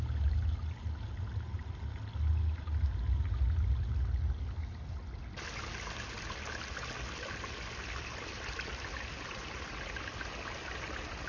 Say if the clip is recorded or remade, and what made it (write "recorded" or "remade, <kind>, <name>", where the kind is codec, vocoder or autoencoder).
recorded